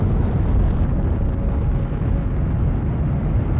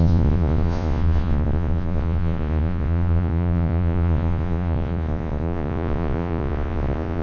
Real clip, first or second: first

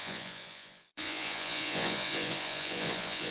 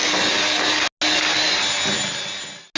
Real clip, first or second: second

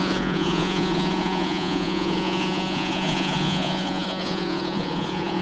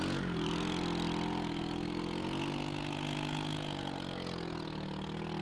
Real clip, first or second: second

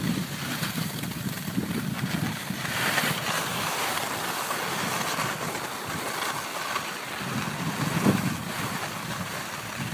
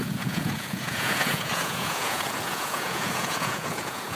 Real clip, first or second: first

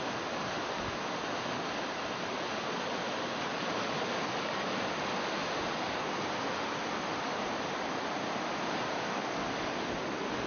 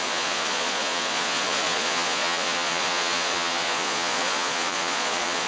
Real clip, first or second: first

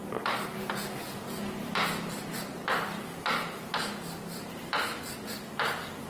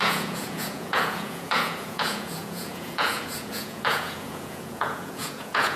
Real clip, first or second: first